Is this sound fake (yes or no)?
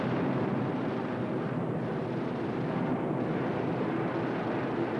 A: no